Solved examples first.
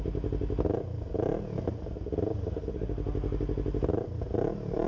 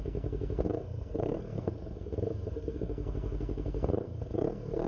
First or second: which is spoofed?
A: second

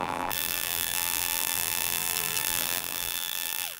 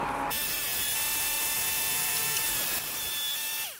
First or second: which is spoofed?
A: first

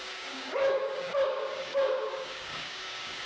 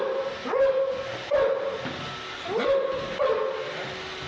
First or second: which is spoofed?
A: first